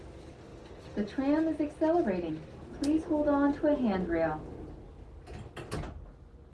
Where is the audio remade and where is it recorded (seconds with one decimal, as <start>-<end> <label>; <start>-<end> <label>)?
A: 0.0-6.5 recorded